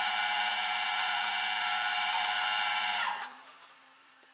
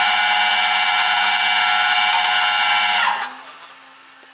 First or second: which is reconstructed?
first